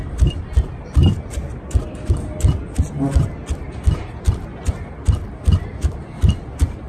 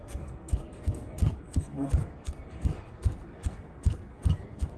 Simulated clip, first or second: second